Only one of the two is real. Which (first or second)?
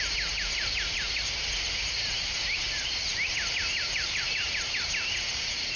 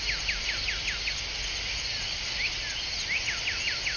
second